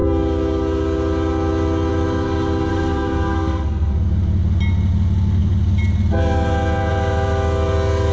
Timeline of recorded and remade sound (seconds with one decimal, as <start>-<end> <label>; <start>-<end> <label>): 0.0-2.7 recorded; 2.7-3.9 remade; 3.9-8.1 recorded